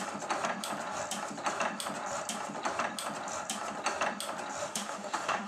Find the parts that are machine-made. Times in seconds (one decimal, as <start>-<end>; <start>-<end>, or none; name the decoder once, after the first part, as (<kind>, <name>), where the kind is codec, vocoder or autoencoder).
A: 4.6-5.5 (autoencoder, DAC-VAE)